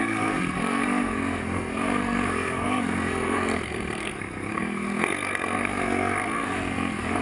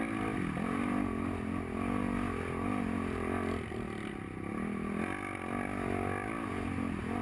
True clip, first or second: second